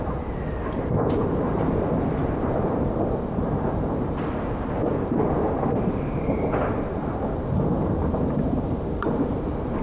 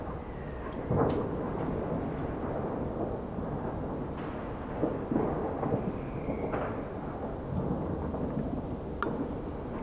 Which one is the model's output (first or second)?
first